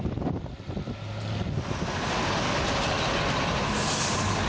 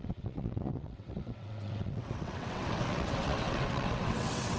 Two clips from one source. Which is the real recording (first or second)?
first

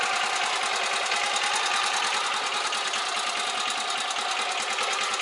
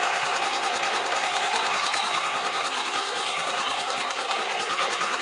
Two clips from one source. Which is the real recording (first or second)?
first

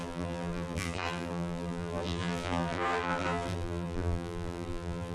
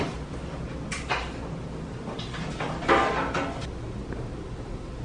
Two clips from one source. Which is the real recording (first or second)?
second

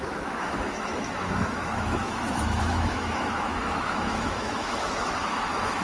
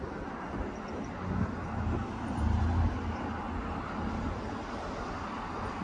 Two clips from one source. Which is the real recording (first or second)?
second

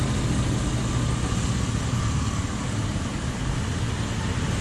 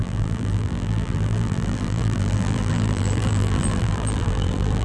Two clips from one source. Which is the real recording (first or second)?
first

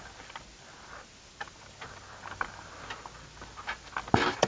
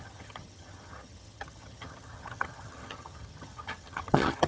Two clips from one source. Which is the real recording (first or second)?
first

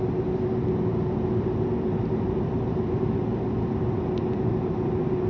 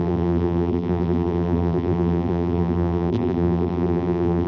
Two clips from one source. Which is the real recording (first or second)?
first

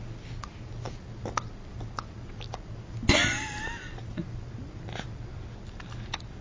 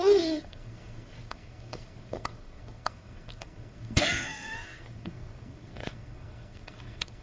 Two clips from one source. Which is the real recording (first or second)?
first